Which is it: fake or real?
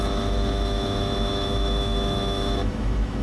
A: fake